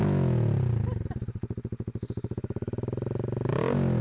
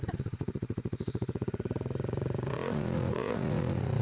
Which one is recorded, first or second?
first